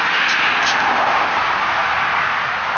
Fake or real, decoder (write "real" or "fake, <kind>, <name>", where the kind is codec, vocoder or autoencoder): real